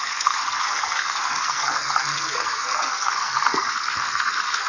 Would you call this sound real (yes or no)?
no